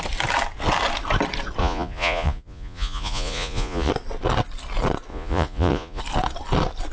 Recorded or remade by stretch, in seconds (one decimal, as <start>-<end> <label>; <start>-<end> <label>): 0.0-1.6 recorded; 1.6-3.9 remade; 3.9-5.1 recorded; 5.1-6.0 remade; 6.0-6.9 recorded

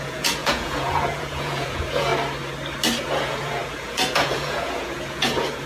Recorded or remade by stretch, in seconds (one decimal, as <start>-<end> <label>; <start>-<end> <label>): 0.0-2.1 remade; 2.1-3.0 recorded; 3.0-5.7 remade

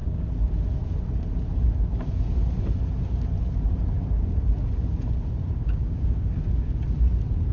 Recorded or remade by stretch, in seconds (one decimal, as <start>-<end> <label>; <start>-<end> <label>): 0.0-5.5 recorded; 5.5-6.3 remade; 6.3-7.5 recorded

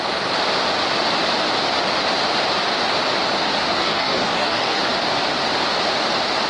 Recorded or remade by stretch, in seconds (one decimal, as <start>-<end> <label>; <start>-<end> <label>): 0.0-3.7 recorded; 3.7-4.8 remade; 4.8-6.5 recorded

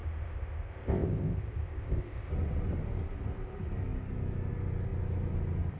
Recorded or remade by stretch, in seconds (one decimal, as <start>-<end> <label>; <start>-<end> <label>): 0.0-2.3 remade; 2.3-5.8 recorded

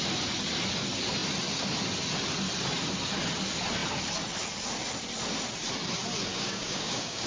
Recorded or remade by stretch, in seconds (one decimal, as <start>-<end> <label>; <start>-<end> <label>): 0.0-6.3 recorded; 6.3-7.3 remade